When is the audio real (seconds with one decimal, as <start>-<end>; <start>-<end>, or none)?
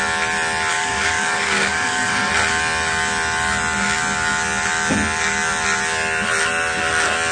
0.0-0.7; 2.3-7.3